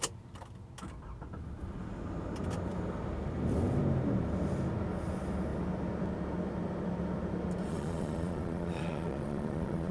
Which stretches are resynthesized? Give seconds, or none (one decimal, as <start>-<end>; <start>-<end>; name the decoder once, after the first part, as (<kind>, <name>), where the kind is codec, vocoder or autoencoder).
7.7-9.9 (vocoder, Vocos)